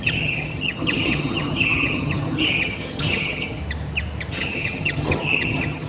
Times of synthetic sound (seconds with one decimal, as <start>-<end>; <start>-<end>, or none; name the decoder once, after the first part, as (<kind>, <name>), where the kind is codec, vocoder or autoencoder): 0.0-3.6 (vocoder, HiFi-GAN); 4.3-5.9